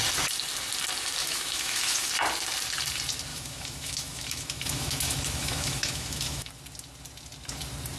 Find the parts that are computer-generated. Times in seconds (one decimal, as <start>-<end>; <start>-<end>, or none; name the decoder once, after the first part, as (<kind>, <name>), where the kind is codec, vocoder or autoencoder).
1.2-2.1 (autoencoder, DAC-VAE); 3.3-6.5